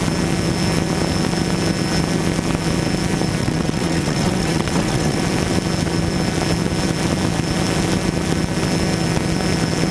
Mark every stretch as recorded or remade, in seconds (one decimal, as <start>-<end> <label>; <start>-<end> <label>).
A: 0.0-3.4 recorded; 3.4-5.2 remade; 5.2-9.9 recorded